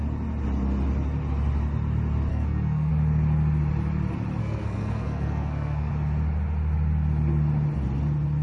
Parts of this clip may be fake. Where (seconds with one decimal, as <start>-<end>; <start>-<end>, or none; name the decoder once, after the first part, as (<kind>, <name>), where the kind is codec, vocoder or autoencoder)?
2.3-2.9 (codec, SNAC); 4.4-5.9